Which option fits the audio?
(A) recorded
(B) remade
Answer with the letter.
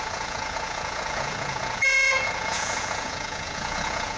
B